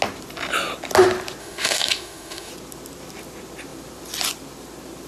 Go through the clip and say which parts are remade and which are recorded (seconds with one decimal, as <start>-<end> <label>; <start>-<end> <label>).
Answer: 0.0-1.4 recorded; 1.4-2.5 remade; 2.5-5.1 recorded